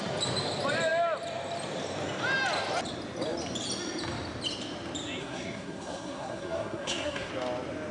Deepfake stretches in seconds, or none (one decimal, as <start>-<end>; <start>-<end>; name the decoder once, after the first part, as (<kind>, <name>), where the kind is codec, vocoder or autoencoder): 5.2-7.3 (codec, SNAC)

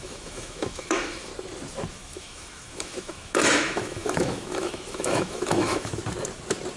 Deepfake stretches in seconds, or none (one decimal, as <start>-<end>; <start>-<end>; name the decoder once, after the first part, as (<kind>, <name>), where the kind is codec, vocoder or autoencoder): 0.0-1.3 (autoencoder, DAC-VAE); 1.9-6.0

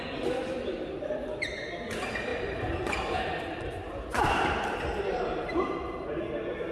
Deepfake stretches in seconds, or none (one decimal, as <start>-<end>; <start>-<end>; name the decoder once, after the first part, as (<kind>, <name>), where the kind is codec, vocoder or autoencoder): 0.4-1.5 (vocoder, BigVGAN v2); 2.3-6.2